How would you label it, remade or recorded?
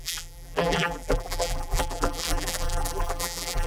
remade